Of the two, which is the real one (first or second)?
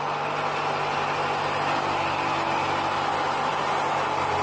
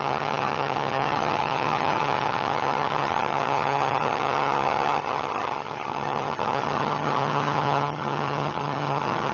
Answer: first